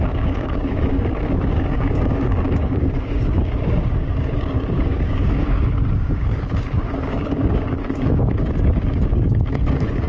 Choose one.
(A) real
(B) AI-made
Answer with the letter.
B